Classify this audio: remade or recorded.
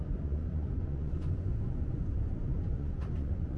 remade